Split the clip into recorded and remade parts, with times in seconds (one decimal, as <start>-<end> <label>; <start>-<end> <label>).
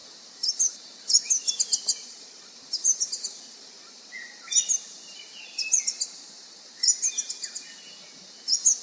0.0-1.9 recorded; 1.9-2.6 remade; 2.6-8.8 recorded